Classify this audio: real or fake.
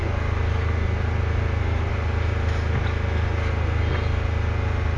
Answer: real